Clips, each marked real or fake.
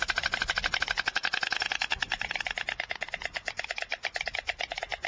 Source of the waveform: real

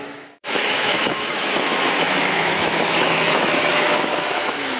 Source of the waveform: fake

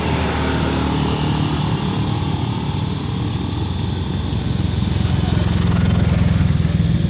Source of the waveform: real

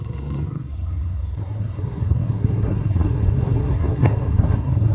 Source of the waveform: fake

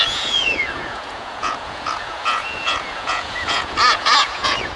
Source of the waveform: fake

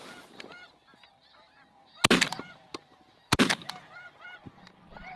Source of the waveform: fake